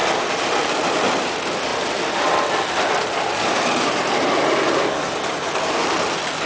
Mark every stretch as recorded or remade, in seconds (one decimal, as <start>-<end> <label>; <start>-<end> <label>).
0.0-6.5 recorded